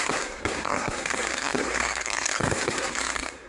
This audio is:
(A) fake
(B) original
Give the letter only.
A